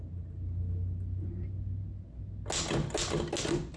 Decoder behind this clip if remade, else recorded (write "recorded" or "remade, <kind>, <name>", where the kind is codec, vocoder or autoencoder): recorded